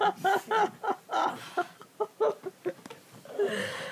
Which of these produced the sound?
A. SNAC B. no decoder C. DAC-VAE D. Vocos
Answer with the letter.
B